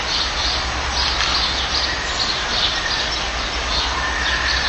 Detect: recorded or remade recorded